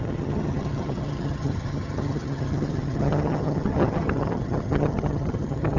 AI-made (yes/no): yes